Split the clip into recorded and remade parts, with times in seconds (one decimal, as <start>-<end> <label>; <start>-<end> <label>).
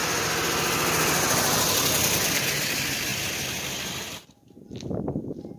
0.0-5.6 recorded